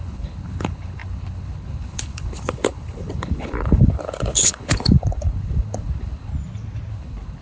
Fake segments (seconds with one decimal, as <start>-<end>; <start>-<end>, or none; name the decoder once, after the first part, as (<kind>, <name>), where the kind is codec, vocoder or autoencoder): 0.0-6.3 (codec, HILCodec); 6.9-7.4